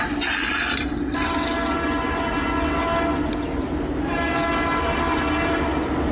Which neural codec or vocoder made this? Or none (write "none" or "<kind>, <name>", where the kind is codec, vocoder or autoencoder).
none